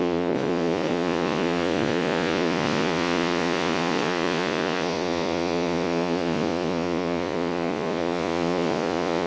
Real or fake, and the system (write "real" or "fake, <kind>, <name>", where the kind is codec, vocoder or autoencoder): fake, vocoder, Vocos